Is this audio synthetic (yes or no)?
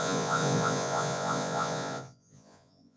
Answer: yes